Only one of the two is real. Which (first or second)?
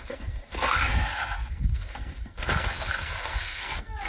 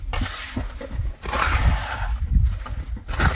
second